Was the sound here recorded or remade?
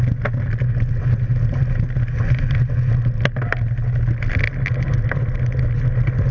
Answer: recorded